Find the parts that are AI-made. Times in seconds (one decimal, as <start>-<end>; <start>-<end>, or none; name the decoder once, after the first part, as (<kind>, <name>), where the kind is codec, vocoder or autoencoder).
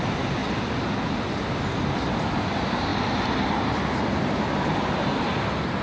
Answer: 0.0-0.4 (vocoder, BigVGAN v2); 2.2-5.8